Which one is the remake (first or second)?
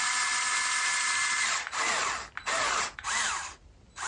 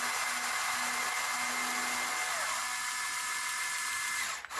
first